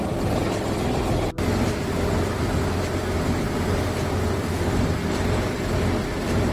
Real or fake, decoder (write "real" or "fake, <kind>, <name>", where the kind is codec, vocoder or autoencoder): real